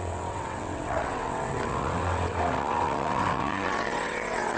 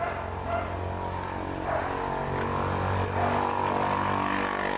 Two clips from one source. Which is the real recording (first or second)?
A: second